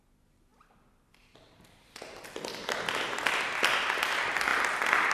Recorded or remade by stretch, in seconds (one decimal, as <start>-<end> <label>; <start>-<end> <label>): 0.0-5.1 recorded